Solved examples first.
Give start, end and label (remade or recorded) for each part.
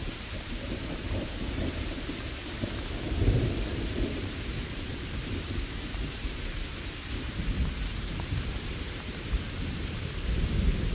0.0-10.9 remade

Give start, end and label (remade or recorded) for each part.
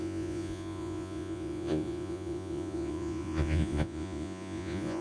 0.0-5.0 remade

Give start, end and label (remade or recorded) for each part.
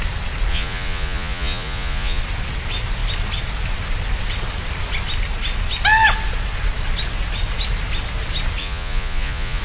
0.0-0.5 recorded; 0.5-2.2 remade; 2.2-8.6 recorded; 8.6-9.6 remade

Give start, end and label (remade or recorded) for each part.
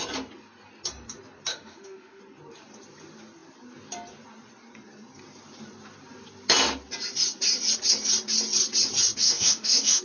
0.0-1.5 recorded; 1.5-2.2 remade; 2.2-9.2 recorded; 9.2-10.0 remade